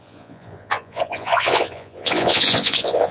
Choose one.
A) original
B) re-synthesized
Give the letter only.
B